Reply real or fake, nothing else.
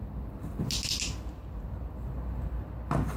real